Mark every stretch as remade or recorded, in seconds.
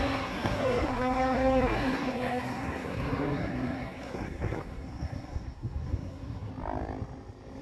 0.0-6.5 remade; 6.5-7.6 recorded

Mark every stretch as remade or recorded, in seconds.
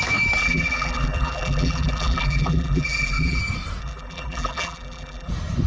0.0-0.4 recorded; 0.4-3.4 remade; 3.4-3.8 recorded; 3.8-5.3 remade; 5.3-5.7 recorded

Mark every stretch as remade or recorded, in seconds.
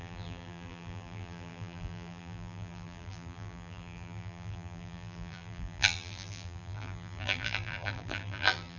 0.0-8.8 remade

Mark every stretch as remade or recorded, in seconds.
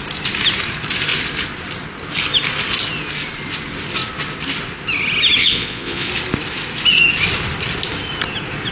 0.0-5.4 recorded; 5.4-6.1 remade; 6.1-8.7 recorded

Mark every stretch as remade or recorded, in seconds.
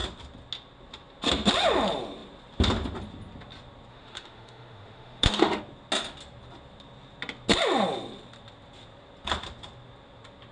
0.0-3.9 recorded; 3.9-5.6 remade; 5.6-10.5 recorded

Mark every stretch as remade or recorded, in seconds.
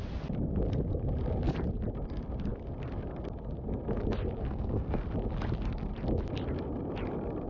0.0-4.4 recorded; 4.4-5.0 remade; 5.0-7.5 recorded